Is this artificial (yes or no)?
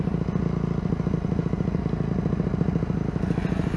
no